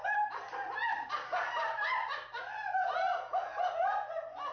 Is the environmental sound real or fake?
real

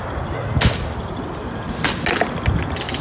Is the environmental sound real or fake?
real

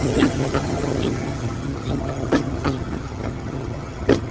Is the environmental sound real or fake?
fake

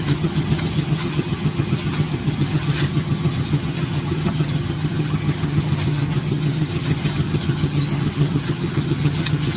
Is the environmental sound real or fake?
fake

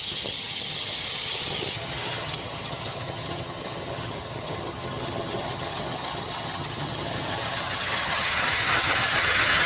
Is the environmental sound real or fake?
fake